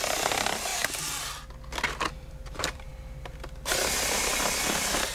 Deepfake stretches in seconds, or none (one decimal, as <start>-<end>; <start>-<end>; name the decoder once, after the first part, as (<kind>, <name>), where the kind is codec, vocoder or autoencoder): 0.0-0.7 (vocoder, BigVGAN v2); 2.1-2.9; 3.7-5.1